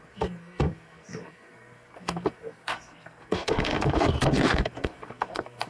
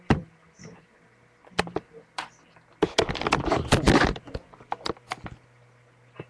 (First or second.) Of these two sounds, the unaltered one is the second